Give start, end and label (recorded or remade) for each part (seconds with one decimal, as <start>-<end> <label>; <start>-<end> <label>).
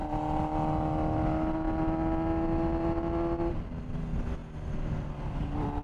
0.0-5.8 recorded